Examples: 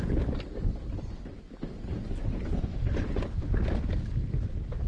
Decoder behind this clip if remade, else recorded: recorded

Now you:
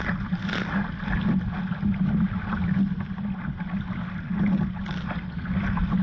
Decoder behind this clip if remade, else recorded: recorded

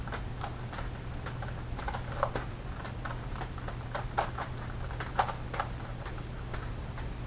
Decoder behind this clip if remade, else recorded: recorded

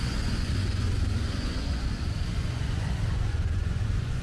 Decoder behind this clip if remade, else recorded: remade, vocoder, Vocos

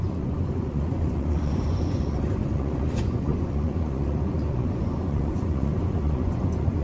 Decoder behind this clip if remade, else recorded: remade, vocoder, Vocos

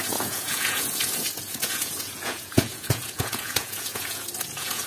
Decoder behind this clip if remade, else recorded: remade, vocoder, Vocos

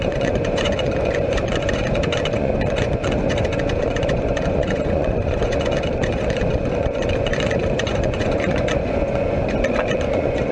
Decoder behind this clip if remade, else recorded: remade, vocoder, Vocos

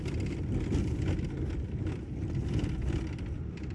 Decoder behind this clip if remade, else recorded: recorded